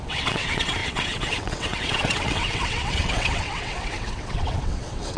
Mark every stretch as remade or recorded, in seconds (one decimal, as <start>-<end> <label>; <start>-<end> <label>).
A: 0.0-5.2 remade